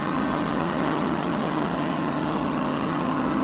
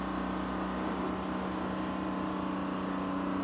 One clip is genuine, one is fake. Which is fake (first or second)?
first